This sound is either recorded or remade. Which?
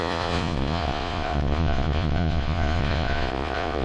remade